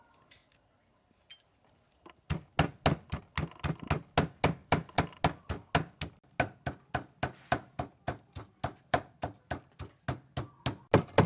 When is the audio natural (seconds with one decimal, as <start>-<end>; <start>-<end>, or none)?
0.0-11.3